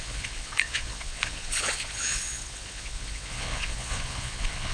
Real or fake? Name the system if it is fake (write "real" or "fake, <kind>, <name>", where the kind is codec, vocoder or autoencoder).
fake, vocoder, Vocos